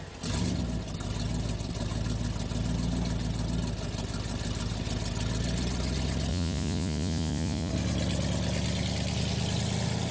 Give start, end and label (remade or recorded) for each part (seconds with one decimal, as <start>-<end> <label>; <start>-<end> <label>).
0.0-6.3 recorded; 6.3-7.7 remade; 7.7-10.1 recorded